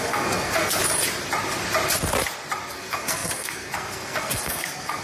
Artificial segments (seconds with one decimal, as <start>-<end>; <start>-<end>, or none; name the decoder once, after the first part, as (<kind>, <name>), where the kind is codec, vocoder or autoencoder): 0.0-0.8 (codec, SNAC); 2.7-5.0